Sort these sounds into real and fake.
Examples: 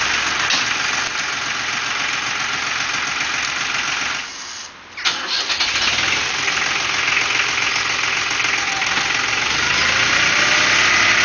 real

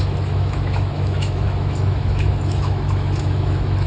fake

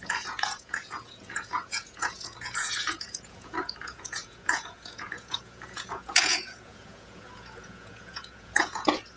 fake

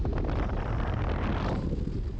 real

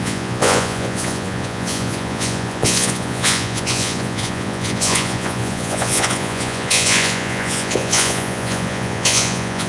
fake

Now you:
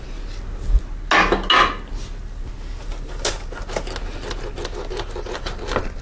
real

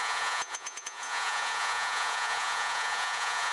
fake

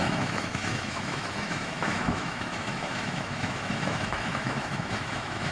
fake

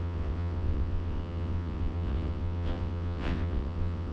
fake